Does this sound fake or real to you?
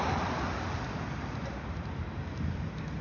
real